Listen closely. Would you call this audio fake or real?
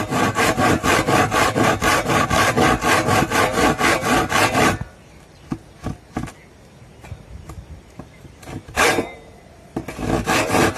real